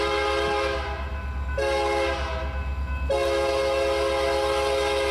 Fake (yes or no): no